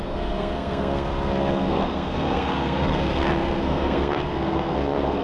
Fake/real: fake